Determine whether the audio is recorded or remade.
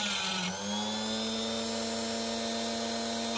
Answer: recorded